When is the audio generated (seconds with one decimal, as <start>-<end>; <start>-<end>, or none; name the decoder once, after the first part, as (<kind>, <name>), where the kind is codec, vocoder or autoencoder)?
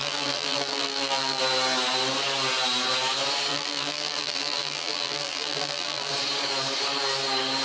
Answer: 0.0-1.4 (vocoder, BigVGAN v2); 3.5-6.1